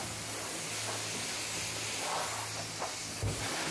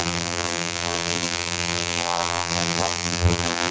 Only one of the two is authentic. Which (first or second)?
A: first